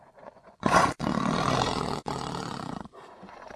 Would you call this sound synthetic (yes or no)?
yes